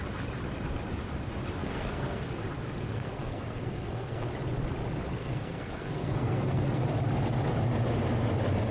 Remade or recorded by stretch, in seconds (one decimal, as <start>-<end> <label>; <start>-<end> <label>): 0.0-1.6 recorded; 1.6-2.2 remade; 2.2-2.9 recorded; 2.9-4.3 remade; 4.3-5.2 recorded; 5.2-6.8 remade; 6.8-8.7 recorded